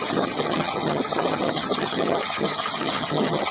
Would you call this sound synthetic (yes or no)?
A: yes